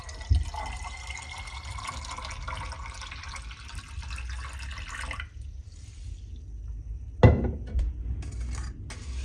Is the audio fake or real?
real